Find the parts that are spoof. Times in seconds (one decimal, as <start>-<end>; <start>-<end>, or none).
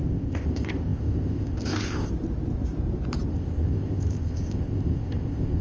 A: 0.0-2.1; 3.3-5.6